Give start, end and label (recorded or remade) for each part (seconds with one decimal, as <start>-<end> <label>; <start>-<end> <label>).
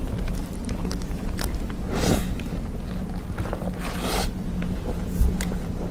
0.0-5.9 recorded